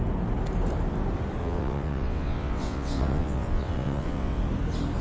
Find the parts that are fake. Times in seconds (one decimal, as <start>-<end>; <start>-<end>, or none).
1.4-4.4